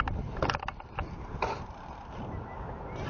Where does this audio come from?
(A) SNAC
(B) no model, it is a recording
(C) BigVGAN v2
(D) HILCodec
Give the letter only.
C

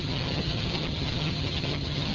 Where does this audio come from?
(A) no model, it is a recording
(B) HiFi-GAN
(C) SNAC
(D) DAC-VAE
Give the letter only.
B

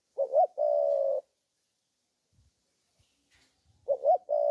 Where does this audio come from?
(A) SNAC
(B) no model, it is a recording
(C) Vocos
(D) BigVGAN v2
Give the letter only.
B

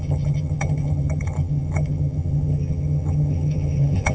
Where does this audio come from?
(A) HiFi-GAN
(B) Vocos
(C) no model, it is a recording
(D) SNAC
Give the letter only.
A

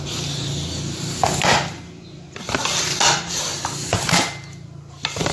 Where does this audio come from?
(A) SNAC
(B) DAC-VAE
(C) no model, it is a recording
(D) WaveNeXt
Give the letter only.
C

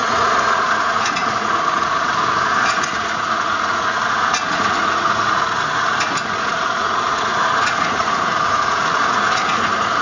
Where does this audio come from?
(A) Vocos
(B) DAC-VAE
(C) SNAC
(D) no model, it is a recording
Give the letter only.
A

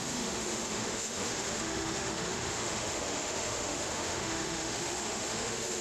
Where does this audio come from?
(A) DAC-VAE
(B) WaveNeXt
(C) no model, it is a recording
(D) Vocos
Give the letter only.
A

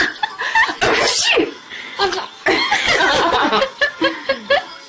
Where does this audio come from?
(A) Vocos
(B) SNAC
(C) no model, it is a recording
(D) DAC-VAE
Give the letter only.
C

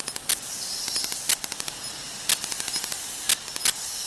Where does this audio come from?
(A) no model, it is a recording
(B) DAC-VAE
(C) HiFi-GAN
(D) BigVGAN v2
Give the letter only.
A